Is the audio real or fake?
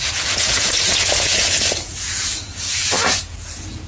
fake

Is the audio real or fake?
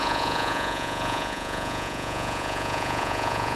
fake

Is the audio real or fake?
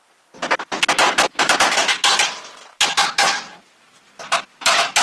real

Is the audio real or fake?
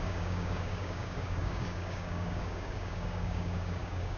fake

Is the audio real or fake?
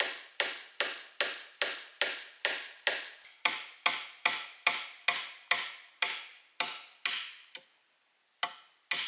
real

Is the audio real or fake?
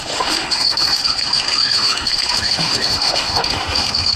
fake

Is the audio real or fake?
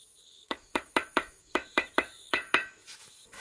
fake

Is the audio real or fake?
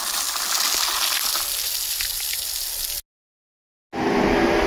real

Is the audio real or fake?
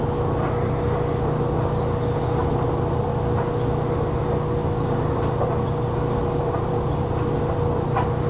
real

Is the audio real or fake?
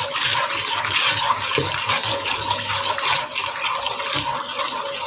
real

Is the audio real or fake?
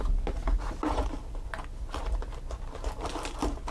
real